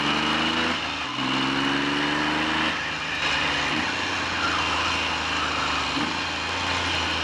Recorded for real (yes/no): yes